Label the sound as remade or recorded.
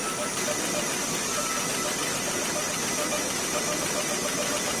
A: recorded